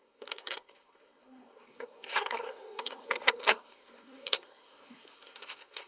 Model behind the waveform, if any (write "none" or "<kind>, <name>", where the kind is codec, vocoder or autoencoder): codec, SNAC